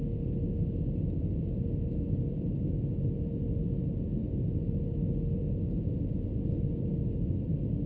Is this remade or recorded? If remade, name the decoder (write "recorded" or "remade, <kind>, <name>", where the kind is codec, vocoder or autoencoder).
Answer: recorded